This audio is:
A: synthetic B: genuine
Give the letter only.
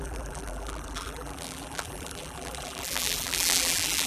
A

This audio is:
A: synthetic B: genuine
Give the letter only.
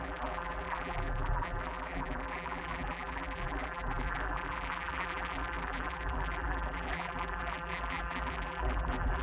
A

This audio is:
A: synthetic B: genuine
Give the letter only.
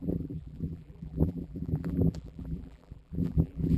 A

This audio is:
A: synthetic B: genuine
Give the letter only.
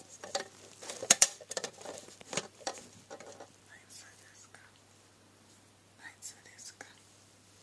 A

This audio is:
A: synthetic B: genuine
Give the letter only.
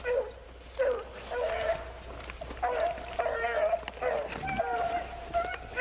B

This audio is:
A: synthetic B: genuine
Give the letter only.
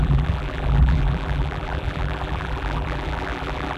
A